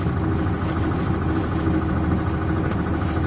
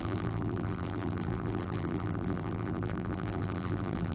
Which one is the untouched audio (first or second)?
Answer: first